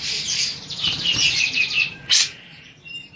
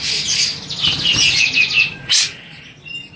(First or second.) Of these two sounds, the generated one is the first